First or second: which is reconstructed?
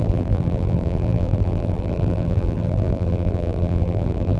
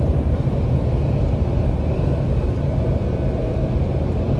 first